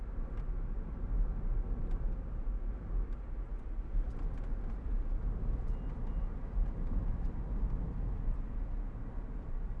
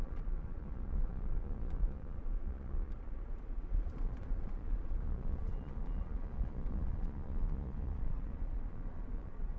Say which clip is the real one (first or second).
first